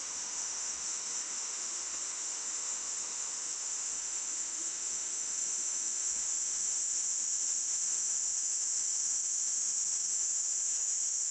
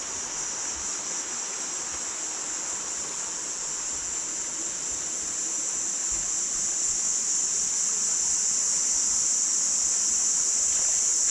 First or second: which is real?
second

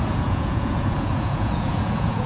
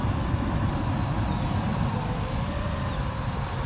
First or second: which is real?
second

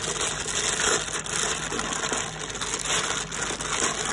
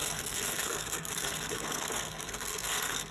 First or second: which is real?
first